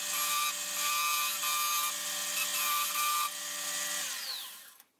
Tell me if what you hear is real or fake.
real